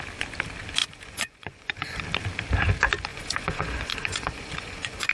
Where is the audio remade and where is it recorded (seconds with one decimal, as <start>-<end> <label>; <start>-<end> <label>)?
0.0-0.8 recorded; 0.8-2.0 remade; 2.0-3.1 recorded; 3.1-5.1 remade